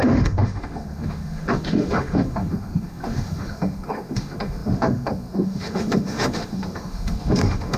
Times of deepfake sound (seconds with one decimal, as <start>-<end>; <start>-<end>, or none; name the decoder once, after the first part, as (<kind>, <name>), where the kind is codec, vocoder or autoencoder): 0.0-7.8 (autoencoder, DAC-VAE)